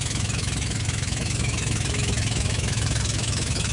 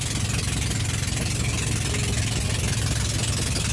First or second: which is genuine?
second